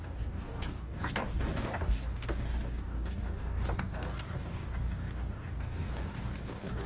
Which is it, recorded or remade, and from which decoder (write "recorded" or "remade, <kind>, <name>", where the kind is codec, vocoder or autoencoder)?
remade, codec, DAC